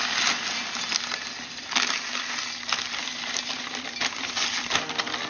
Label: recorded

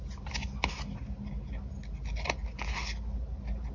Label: recorded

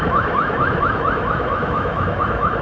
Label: remade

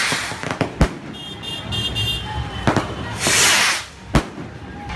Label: recorded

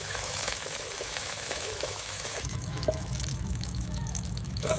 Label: remade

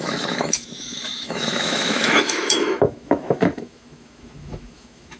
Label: remade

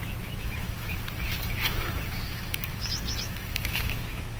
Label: remade